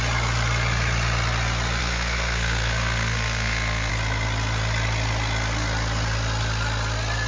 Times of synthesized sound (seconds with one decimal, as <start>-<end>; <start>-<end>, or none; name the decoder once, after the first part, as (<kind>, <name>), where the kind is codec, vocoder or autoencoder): 1.8-3.9 (codec, SNAC)